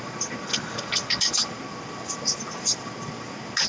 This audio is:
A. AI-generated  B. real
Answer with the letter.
B